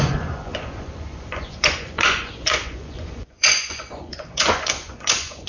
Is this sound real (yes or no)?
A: no